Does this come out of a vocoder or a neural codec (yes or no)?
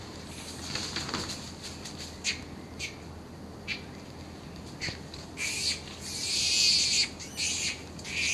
no